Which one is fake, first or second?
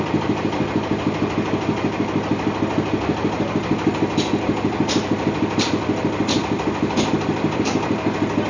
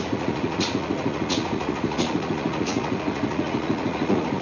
second